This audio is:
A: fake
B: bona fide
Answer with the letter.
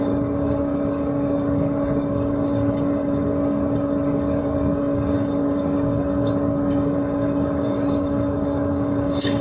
A